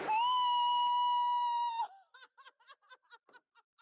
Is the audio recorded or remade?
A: recorded